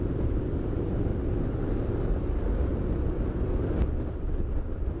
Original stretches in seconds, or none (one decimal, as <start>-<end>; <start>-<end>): 1.1-4.1